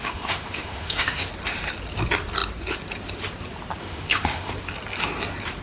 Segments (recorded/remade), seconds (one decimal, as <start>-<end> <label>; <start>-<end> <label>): 0.0-1.3 remade; 1.3-3.8 recorded; 3.8-4.5 remade; 4.5-5.6 recorded